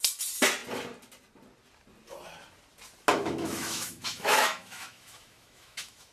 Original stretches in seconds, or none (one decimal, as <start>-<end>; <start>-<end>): 0.0-3.1